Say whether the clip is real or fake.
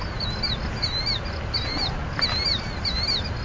real